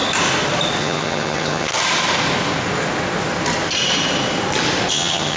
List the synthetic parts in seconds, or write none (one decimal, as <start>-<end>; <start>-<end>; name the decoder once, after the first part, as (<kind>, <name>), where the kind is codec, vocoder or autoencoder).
0.8-1.7 (vocoder, HiFi-GAN); 4.9-5.4